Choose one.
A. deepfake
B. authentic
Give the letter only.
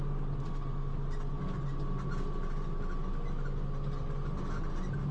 B